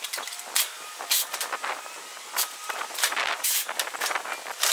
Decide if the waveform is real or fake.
real